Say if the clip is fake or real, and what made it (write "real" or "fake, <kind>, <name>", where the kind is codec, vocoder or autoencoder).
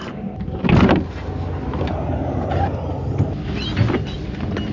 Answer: real